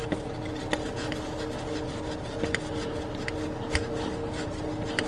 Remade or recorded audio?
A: recorded